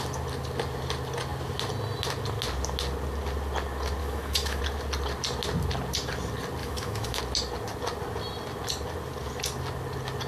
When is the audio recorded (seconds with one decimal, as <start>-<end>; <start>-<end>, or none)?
0.0-4.0; 4.6-6.6; 7.2-10.3